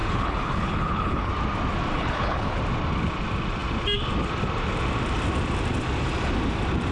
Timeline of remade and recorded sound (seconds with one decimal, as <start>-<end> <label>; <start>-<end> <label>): 0.0-1.3 remade; 1.3-1.9 recorded; 1.9-2.6 remade; 2.6-6.9 recorded